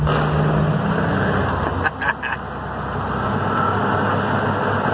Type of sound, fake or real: real